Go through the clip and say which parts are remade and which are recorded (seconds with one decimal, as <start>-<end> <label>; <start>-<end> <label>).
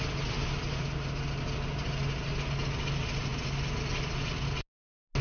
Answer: 0.0-5.2 recorded